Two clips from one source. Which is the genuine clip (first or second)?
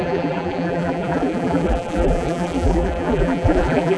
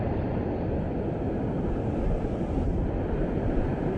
second